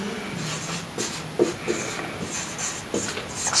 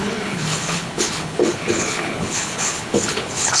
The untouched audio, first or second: first